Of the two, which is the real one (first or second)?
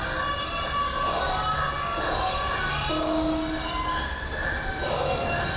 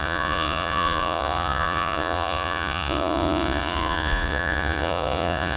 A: first